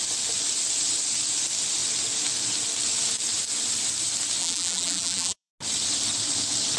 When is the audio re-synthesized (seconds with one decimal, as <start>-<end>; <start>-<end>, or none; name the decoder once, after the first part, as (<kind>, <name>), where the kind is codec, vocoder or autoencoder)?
4.4-5.5 (vocoder, BigVGAN v2)

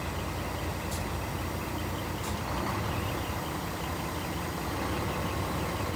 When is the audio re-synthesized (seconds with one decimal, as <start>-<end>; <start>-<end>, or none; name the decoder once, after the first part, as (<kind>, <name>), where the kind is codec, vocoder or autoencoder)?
0.7-4.3 (vocoder, BigVGAN v2)

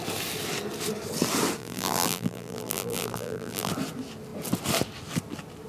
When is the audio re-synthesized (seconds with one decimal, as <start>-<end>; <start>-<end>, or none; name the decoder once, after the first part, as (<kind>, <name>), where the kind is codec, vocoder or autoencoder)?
1.6-3.7 (vocoder, BigVGAN v2)

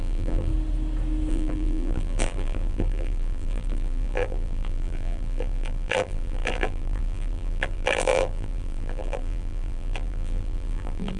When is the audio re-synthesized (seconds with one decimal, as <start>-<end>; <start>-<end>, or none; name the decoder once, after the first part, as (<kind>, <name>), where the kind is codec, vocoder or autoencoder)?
0.0-0.5 (vocoder, BigVGAN v2); 1.3-11.2

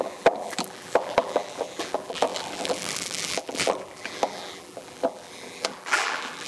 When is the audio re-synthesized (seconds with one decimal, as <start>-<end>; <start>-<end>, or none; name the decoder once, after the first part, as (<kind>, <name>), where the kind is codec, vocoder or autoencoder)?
0.0-6.5 (vocoder, BigVGAN v2)

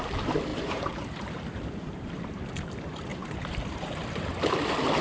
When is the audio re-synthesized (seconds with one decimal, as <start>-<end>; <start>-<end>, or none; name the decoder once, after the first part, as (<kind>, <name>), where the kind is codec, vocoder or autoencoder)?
0.5-2.1 (vocoder, BigVGAN v2); 3.1-4.3

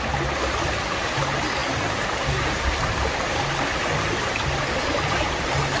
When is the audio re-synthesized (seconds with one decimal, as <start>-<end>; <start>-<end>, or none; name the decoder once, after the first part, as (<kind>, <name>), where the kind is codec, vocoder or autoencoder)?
none

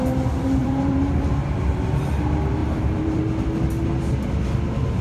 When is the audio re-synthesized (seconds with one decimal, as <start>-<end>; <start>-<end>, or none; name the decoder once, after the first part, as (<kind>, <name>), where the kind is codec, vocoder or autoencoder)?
0.6-1.8 (vocoder, BigVGAN v2); 2.6-3.2